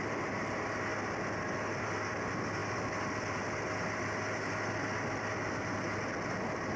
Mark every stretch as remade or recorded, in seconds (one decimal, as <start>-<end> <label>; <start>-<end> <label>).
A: 0.0-6.8 recorded